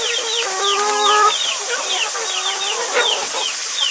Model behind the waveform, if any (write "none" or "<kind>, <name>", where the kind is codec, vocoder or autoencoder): none